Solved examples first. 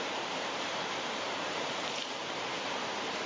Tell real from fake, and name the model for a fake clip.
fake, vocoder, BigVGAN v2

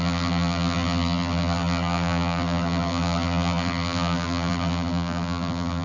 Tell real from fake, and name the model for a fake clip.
fake, vocoder, BigVGAN v2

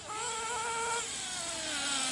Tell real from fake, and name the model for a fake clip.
real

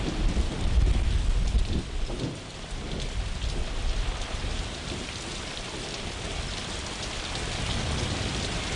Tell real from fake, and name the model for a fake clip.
real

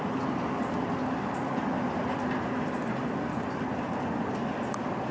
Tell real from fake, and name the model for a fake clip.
real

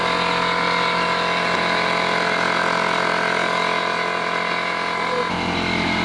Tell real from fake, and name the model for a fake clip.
real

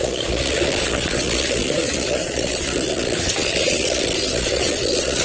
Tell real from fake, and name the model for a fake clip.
fake, vocoder, Vocos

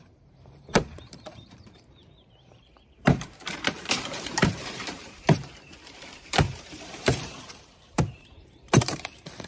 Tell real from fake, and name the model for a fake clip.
fake, vocoder, BigVGAN v2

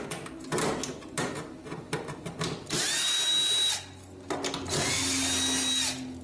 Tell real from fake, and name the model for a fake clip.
real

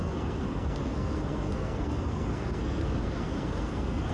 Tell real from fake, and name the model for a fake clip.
fake, codec, SNAC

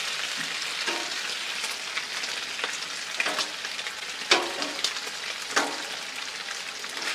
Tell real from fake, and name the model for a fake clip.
real